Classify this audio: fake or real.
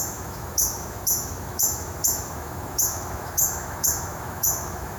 fake